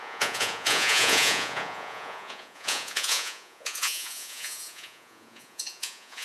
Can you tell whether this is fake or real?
fake